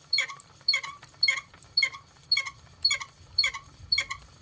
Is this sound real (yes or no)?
no